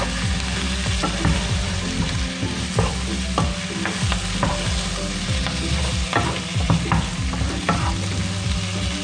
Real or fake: real